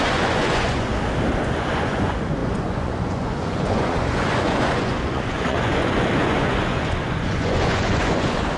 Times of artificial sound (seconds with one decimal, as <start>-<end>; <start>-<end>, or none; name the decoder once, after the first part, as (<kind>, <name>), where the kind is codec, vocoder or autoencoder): 0.0-0.9 (vocoder, Vocos); 1.4-8.6